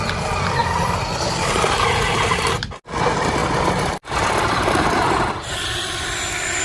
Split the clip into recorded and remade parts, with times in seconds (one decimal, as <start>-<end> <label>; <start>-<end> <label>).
0.0-0.6 recorded; 0.6-2.4 remade; 2.4-6.6 recorded